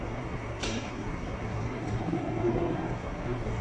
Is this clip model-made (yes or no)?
yes